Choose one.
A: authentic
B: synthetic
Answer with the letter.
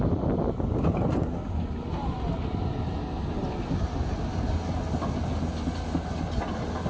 A